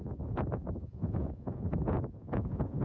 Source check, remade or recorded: remade